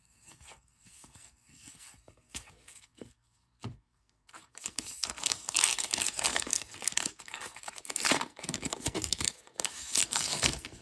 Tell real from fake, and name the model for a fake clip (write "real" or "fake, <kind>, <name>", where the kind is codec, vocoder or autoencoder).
fake, codec, SNAC